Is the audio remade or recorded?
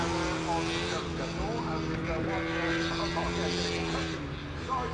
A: recorded